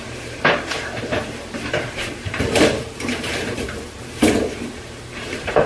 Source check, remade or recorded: remade